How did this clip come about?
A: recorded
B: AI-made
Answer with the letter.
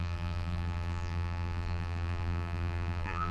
B